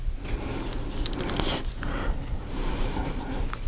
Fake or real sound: real